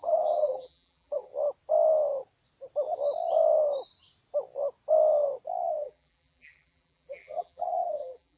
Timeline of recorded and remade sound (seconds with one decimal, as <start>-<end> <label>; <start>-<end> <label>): 0.0-1.3 remade; 1.3-5.8 recorded; 5.8-8.4 remade